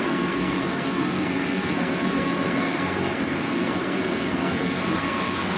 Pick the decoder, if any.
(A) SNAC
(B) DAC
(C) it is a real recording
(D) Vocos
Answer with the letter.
A